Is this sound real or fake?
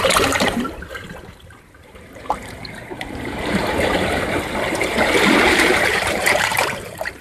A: fake